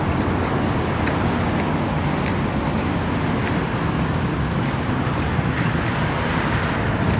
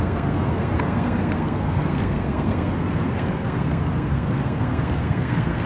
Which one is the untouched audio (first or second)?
first